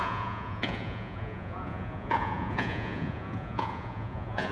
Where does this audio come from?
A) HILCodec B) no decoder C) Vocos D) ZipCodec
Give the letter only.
C